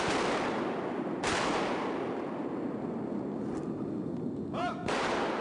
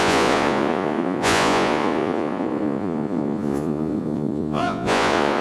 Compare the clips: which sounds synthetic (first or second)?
second